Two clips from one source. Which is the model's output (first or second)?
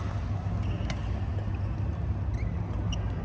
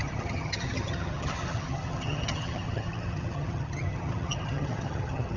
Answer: second